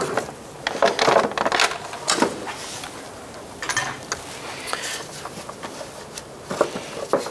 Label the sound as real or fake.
real